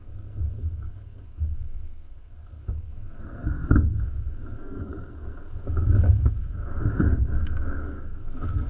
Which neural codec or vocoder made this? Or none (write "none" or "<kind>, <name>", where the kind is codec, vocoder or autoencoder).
codec, SNAC